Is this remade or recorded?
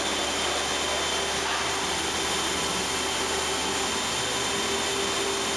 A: recorded